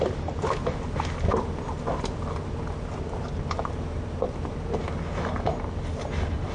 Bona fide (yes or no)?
yes